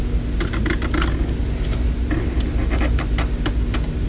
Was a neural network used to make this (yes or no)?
no